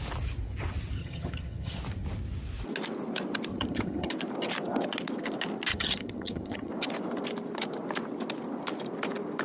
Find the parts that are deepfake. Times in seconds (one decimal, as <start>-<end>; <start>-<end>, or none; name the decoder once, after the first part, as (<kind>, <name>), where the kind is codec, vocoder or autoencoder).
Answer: 1.0-1.8 (vocoder, HiFi-GAN); 3.5-4.1; 5.7-6.7